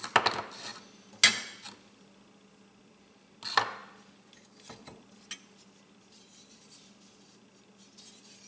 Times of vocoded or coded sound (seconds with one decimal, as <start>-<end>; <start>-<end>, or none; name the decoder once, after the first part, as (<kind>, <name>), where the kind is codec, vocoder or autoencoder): none